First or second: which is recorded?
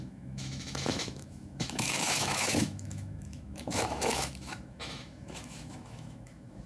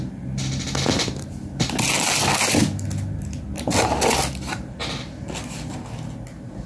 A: second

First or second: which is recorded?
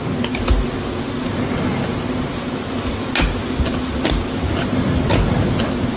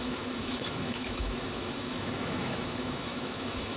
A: first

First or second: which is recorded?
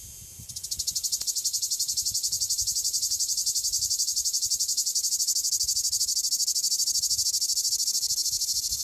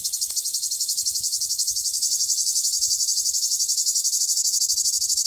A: first